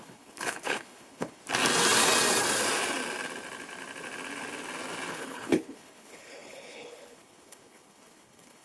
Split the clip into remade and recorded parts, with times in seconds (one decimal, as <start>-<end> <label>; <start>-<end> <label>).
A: 0.0-1.4 remade; 1.4-5.1 recorded; 5.1-8.6 remade